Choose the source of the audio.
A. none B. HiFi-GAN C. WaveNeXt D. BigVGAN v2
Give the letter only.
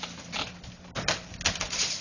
A